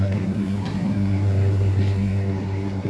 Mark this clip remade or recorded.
remade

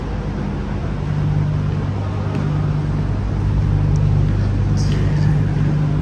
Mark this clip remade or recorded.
recorded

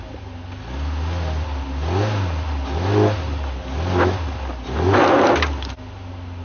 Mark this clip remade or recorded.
recorded